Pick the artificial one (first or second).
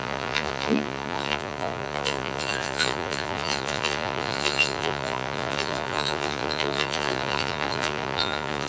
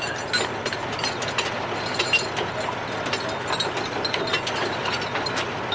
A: first